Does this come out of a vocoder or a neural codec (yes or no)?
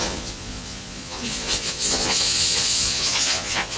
yes